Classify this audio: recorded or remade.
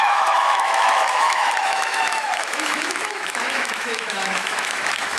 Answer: remade